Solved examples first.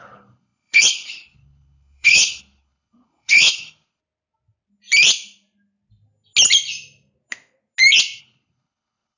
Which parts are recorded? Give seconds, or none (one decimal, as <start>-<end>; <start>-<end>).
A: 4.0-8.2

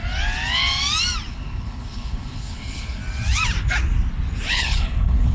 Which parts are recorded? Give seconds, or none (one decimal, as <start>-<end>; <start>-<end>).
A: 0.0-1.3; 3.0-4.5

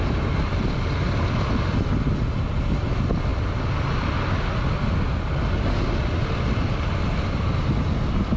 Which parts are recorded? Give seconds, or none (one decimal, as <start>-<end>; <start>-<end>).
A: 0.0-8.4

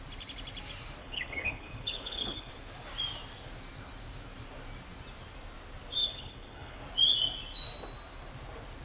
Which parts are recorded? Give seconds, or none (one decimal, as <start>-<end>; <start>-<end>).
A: 0.0-1.0; 2.5-6.0; 6.8-8.8

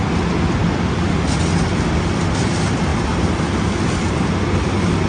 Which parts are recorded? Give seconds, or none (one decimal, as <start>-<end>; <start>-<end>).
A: 0.0-5.1

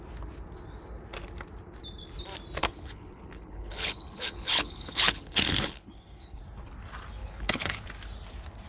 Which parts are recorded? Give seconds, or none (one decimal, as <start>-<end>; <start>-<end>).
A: 0.0-2.6; 6.4-7.2; 7.8-8.7